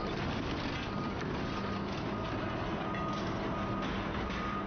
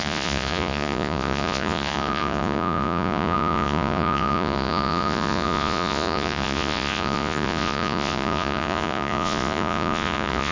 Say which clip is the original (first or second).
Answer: first